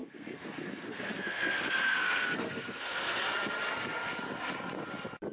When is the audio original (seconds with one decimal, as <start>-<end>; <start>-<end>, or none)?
3.2-5.3